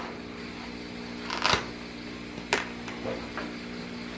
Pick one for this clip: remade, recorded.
recorded